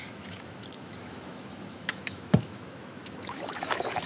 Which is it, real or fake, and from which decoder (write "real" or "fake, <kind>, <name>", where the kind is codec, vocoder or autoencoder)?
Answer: fake, autoencoder, DAC-VAE